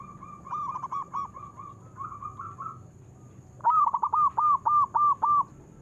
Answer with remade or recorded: recorded